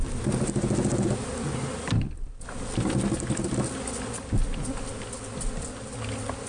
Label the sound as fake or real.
real